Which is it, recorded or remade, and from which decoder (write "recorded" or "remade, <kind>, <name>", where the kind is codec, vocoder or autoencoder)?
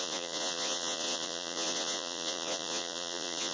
remade, vocoder, Vocos